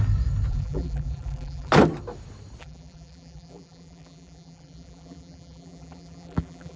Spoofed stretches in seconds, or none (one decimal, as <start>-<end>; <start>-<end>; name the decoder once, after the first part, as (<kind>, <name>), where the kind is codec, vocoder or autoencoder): 0.5-1.7 (vocoder, BigVGAN v2); 2.6-6.8